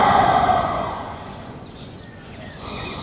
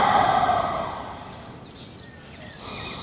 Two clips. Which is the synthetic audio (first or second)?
first